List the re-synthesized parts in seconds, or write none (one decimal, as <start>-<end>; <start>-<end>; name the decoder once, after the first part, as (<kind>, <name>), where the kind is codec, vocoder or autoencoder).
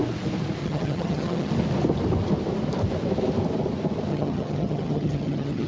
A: 0.6-1.5 (vocoder, HiFi-GAN); 4.1-5.7